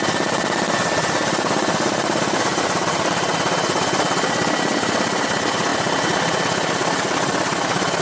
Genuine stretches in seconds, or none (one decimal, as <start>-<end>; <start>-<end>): 0.0-2.5; 3.3-8.0